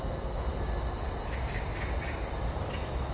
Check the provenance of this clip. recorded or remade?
recorded